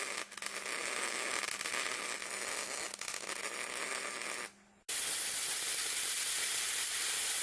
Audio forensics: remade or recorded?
recorded